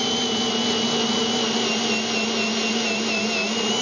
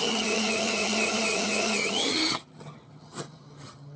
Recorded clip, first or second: first